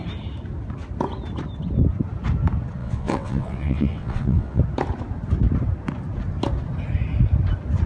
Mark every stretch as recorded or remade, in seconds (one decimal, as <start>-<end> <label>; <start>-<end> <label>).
0.0-2.8 recorded; 2.8-4.6 remade; 4.6-7.9 recorded